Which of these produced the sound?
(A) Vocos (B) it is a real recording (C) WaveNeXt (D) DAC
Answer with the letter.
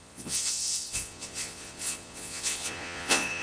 A